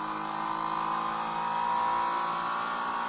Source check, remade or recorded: recorded